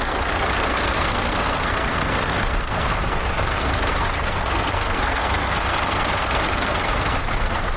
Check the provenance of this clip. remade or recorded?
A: remade